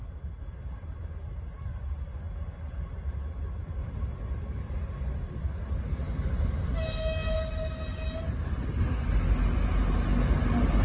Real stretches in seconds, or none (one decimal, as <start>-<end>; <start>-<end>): 0.0-10.8